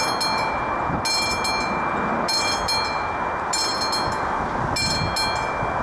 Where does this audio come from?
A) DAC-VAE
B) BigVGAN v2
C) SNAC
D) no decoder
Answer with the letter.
D